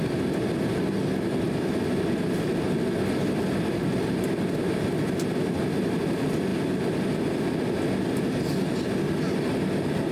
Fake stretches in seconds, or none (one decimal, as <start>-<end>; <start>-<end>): none